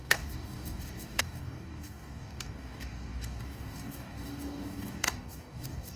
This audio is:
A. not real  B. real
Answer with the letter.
A